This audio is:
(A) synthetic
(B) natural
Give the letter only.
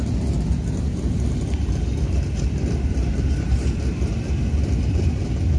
B